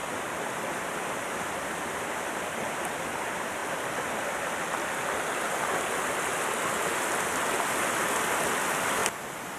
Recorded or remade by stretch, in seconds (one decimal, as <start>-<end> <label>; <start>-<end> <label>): 0.0-2.9 remade; 2.9-9.6 recorded